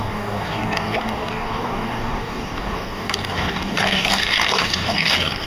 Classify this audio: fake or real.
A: fake